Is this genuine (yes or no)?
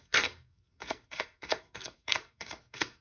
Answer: no